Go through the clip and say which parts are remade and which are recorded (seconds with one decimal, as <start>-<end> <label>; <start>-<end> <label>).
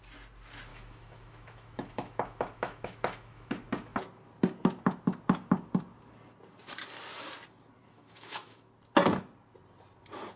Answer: 0.0-0.7 recorded; 0.7-3.5 remade; 3.5-7.8 recorded; 7.8-8.7 remade; 8.7-10.4 recorded